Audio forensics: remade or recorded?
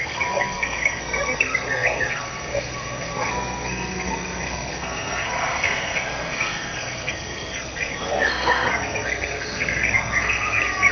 remade